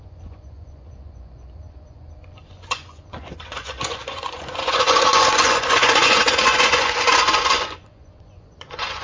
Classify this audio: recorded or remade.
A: remade